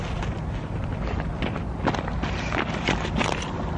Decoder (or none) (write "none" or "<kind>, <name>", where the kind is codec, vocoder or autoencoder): none